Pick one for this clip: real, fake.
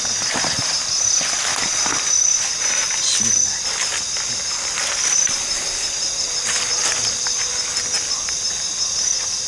real